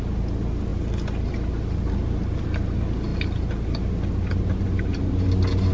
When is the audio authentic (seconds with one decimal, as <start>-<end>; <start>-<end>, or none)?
0.0-5.7